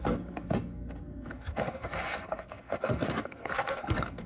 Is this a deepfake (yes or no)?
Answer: yes